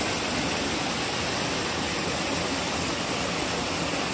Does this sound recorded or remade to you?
recorded